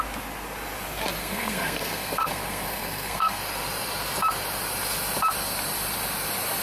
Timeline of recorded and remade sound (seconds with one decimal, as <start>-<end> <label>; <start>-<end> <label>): 0.0-1.2 recorded; 1.2-3.4 remade; 3.4-6.6 recorded